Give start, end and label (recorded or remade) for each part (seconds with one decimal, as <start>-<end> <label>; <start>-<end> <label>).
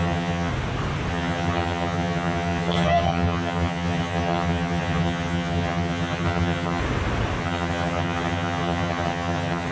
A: 0.0-0.5 remade; 0.5-1.1 recorded; 1.1-6.8 remade; 6.8-7.4 recorded; 7.4-9.7 remade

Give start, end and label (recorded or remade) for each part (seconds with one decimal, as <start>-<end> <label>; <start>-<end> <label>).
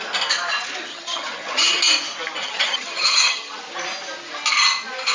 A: 0.0-0.9 recorded; 0.9-1.8 remade; 1.8-2.4 recorded; 2.4-3.6 remade; 3.6-5.1 recorded